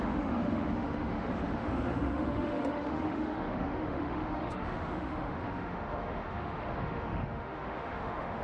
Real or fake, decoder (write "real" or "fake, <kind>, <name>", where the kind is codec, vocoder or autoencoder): fake, autoencoder, DAC-VAE